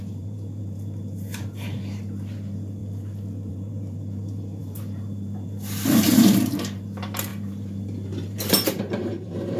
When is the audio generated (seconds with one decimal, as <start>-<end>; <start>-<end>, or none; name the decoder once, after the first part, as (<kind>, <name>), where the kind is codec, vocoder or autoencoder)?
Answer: 0.0-2.8 (vocoder, BigVGAN v2); 3.5-9.6